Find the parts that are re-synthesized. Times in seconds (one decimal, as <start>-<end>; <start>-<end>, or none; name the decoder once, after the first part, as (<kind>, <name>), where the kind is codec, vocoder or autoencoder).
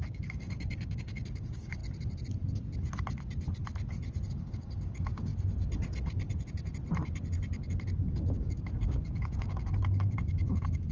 0.0-1.8 (codec, DAC); 4.3-5.3; 8.0-10.9